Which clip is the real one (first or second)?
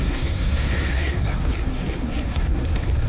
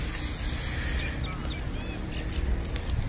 second